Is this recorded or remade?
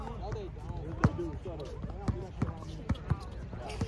recorded